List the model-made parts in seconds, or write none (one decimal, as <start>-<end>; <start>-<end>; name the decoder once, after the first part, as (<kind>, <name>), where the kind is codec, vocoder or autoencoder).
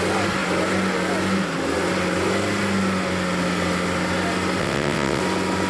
4.6-5.2 (vocoder, WaveNeXt)